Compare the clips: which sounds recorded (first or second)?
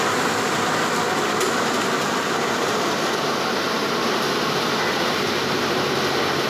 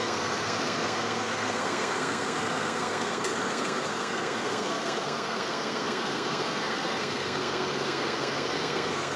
first